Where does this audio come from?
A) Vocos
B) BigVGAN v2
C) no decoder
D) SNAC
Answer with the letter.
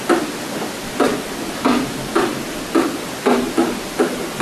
C